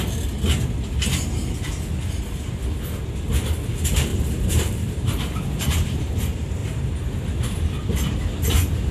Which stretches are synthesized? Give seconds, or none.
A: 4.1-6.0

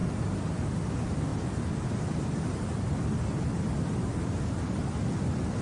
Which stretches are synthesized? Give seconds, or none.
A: none

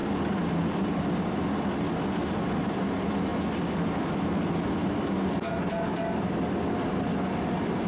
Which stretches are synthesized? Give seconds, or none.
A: none

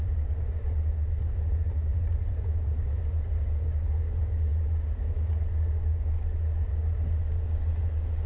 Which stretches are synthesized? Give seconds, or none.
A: 1.9-3.0

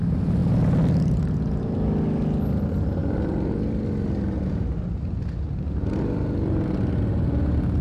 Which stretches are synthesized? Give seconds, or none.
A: none

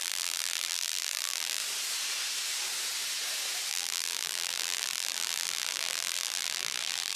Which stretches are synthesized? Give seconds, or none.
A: 0.0-1.6; 3.7-7.2

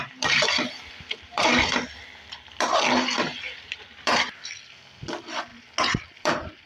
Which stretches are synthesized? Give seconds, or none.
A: 0.0-5.5; 6.1-6.7

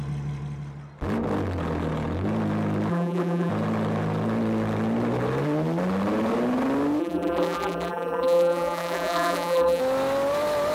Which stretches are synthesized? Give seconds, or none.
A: 2.9-3.5; 7.0-9.8